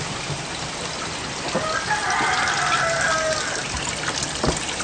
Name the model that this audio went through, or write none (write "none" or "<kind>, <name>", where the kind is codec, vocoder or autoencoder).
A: none